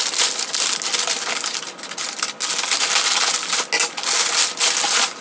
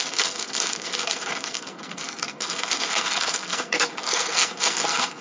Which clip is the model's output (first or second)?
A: second